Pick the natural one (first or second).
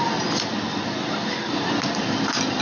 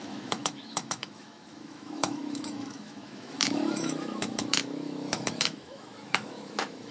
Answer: first